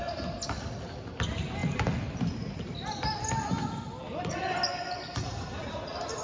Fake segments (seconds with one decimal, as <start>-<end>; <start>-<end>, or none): none